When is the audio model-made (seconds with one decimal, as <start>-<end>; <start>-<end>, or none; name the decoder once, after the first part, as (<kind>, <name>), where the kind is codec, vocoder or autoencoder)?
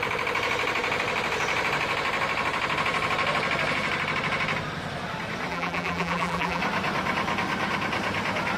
5.5-6.6 (vocoder, BigVGAN v2)